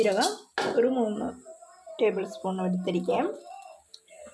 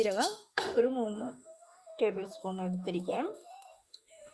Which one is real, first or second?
first